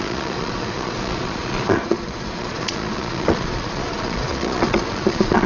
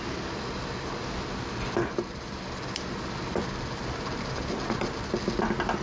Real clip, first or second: second